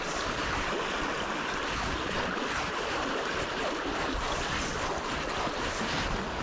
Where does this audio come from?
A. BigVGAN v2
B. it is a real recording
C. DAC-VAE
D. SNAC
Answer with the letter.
B